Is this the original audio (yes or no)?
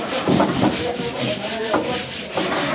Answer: no